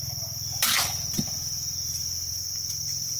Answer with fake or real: real